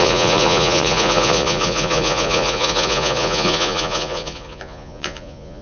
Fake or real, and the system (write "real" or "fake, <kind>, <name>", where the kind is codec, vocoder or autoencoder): fake, vocoder, Vocos